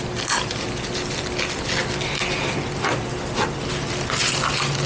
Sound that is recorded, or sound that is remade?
recorded